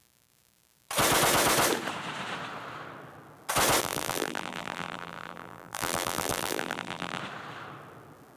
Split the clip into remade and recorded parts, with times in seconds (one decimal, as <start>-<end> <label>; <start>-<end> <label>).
0.0-3.8 recorded; 3.8-7.2 remade; 7.2-8.4 recorded